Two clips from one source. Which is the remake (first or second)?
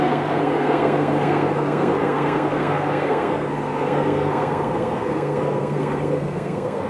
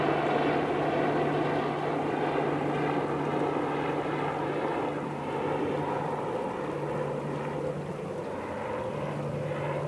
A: first